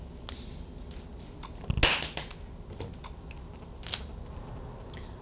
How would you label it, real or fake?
real